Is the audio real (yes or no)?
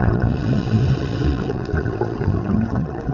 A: no